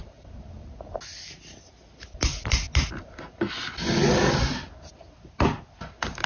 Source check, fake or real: real